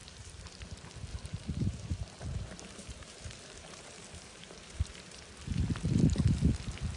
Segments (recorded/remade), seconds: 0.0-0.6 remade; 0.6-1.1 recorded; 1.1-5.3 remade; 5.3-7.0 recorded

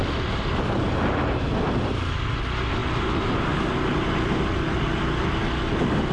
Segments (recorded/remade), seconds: 0.0-6.1 recorded

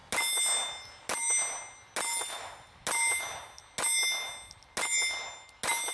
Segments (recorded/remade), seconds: 0.0-5.9 recorded

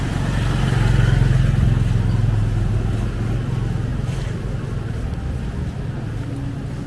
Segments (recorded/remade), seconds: 0.0-6.9 recorded

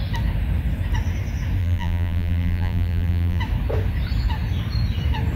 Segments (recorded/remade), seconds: 0.0-1.6 recorded; 1.6-3.4 remade; 3.4-5.4 recorded

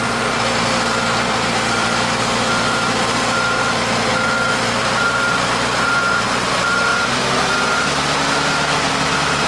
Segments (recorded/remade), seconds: 0.0-9.5 remade